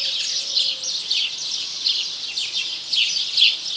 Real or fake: real